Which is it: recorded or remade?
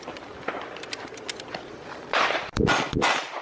remade